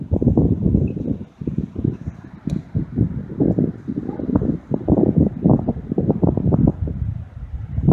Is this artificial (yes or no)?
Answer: no